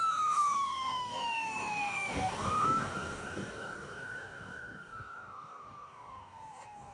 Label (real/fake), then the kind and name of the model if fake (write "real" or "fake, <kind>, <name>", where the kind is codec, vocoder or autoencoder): fake, codec, DAC